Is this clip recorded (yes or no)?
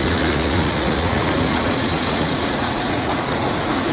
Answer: no